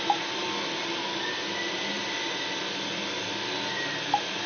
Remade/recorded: recorded